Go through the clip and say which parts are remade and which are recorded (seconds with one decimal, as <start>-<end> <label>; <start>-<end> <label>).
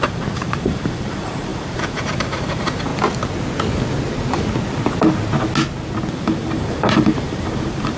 0.0-2.9 remade; 2.9-6.1 recorded; 6.1-8.0 remade